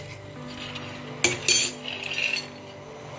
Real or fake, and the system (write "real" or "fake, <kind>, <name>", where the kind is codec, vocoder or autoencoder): real